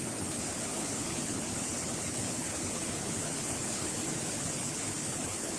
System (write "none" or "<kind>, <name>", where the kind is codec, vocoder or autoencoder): codec, HILCodec